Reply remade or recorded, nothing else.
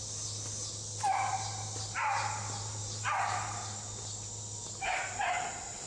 recorded